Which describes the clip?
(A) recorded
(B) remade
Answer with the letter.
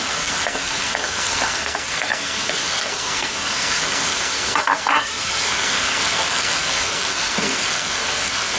B